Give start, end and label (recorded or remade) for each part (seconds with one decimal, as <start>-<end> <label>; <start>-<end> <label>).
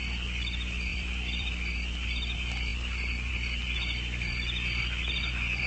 0.0-0.9 recorded; 0.9-1.5 remade; 1.5-5.7 recorded